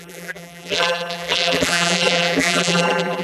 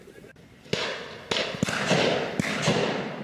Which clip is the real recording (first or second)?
second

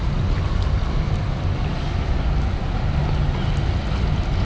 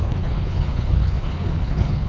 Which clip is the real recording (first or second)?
first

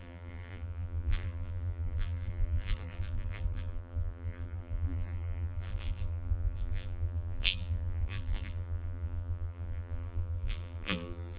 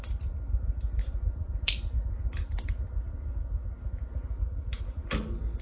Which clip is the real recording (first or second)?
second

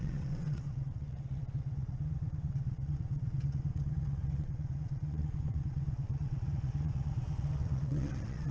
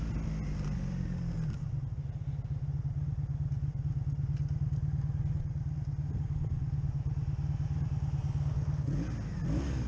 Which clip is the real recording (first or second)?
second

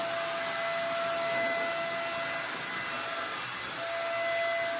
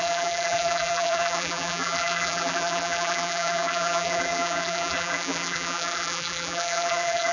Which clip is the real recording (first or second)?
first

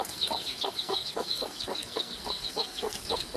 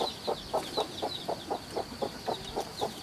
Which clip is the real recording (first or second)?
second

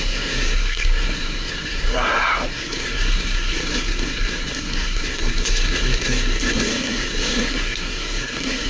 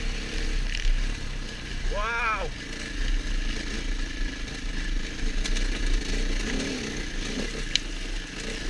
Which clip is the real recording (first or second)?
second